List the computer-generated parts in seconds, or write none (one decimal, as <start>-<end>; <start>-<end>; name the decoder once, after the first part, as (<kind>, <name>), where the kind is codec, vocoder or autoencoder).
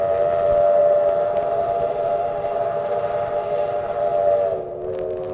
0.8-4.0 (vocoder, BigVGAN v2)